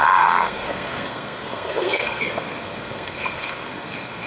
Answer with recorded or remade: remade